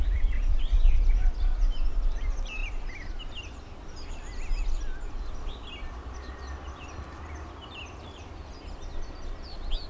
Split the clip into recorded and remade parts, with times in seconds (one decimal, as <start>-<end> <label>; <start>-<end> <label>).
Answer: 0.0-9.9 recorded